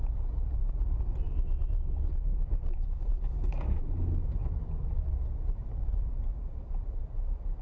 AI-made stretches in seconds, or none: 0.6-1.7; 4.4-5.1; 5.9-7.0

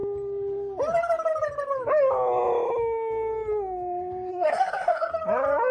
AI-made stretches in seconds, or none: 4.3-5.1

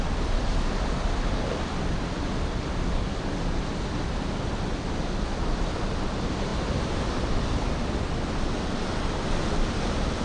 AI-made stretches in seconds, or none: none

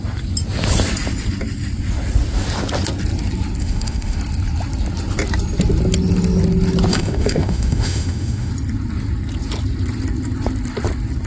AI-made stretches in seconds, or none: 3.6-4.2; 6.9-8.5